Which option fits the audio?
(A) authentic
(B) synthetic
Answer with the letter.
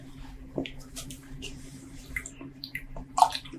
B